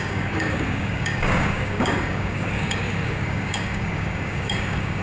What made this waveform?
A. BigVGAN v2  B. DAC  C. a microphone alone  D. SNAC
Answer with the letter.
B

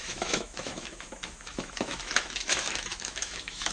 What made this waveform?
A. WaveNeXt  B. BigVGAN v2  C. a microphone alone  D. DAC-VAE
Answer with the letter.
D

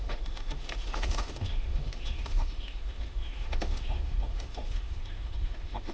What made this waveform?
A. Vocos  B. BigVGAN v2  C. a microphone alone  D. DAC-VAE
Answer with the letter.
D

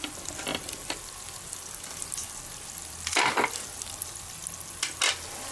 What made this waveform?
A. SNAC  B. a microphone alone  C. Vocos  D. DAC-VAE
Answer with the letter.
B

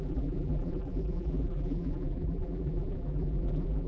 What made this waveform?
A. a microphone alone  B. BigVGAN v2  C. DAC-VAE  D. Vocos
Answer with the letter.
B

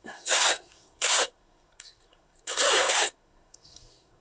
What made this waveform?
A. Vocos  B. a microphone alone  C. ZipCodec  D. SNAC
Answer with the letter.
D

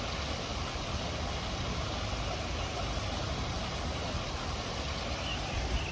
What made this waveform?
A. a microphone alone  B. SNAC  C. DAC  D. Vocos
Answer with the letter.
A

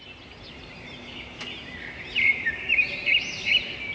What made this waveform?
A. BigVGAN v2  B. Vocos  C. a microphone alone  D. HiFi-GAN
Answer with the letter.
A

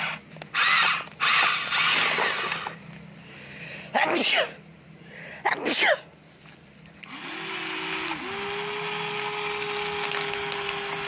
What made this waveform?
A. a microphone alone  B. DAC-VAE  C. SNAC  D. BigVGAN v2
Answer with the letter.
A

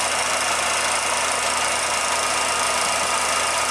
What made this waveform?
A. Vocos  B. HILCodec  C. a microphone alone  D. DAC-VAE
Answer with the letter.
C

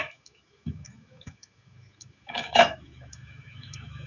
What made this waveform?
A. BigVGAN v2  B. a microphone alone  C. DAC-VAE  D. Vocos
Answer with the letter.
C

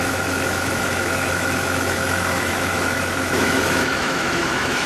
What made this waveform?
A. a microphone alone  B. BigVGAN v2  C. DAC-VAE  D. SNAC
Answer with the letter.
C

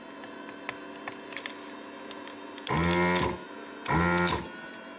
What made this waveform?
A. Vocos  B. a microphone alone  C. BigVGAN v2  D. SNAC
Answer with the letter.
B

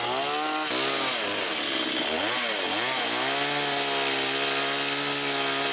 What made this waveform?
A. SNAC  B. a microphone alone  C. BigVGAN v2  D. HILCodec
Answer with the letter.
B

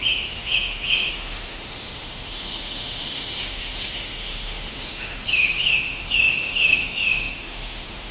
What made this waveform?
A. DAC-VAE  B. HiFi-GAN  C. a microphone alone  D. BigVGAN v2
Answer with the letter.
A